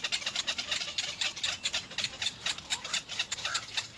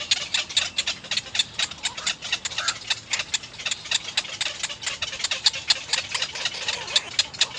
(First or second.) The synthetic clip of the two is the first